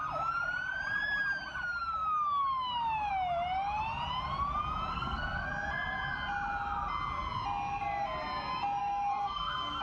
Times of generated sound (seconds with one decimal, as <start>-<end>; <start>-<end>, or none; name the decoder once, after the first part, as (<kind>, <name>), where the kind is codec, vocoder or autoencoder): 4.9-5.5 (codec, SNAC); 8.8-9.8